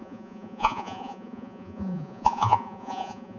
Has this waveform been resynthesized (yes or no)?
yes